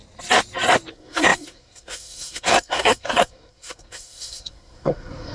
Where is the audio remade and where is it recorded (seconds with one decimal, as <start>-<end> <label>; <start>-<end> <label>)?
0.0-0.9 recorded; 0.9-5.3 remade